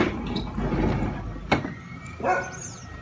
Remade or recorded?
recorded